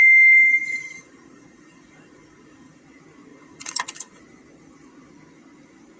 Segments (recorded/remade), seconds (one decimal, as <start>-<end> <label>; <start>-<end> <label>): 0.0-0.5 recorded; 0.5-2.8 remade; 2.8-3.3 recorded; 3.3-4.2 remade; 4.2-6.0 recorded